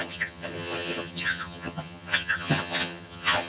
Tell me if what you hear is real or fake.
fake